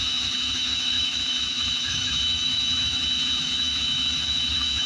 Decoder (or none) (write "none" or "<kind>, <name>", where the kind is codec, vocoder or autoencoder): autoencoder, DAC-VAE